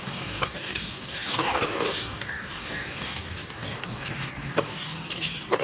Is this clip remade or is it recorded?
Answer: remade